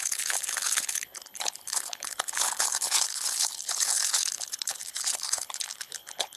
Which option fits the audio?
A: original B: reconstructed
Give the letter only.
B